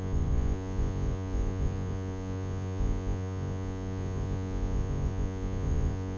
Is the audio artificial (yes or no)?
yes